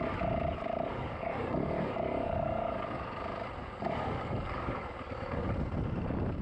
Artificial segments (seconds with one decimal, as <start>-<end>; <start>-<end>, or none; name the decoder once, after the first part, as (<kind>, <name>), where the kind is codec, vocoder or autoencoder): 0.9-3.2 (codec, DAC); 3.6-5.5